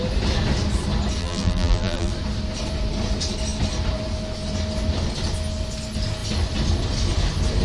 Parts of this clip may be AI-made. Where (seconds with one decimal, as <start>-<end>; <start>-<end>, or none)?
1.2-2.1